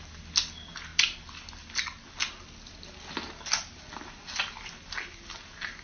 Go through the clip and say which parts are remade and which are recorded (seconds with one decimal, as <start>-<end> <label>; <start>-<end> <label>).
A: 0.0-5.8 recorded